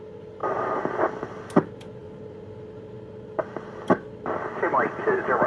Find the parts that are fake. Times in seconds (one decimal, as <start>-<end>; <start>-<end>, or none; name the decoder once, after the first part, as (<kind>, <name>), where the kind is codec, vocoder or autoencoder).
0.4-1.0 (vocoder, BigVGAN v2); 2.0-5.5